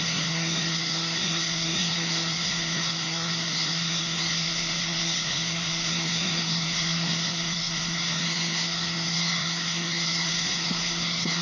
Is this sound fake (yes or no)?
yes